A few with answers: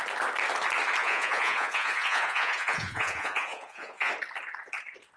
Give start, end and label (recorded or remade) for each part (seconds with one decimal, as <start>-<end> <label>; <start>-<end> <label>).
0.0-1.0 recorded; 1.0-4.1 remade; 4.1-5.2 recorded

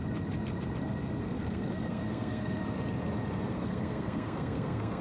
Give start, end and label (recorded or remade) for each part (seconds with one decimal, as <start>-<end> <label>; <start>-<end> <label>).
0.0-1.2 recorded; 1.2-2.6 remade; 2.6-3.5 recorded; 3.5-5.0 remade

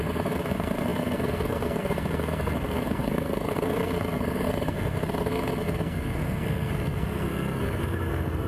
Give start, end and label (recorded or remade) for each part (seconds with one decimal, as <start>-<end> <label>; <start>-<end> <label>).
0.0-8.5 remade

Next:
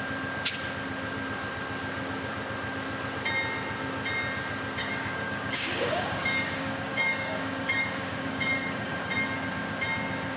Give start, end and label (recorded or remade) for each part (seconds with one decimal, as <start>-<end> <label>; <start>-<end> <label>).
0.0-4.8 recorded; 4.8-9.1 remade; 9.1-10.4 recorded

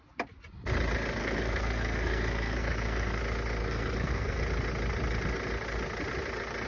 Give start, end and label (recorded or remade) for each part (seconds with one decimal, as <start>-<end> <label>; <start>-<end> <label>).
0.0-1.2 recorded; 1.2-3.2 remade; 3.2-3.6 recorded; 3.6-4.4 remade; 4.4-6.7 recorded